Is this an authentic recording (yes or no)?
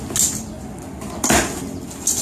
yes